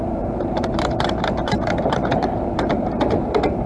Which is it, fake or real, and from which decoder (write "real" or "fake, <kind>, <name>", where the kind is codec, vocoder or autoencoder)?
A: fake, vocoder, BigVGAN v2